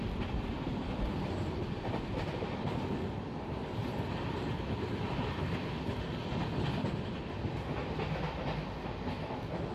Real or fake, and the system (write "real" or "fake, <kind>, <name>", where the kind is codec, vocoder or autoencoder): real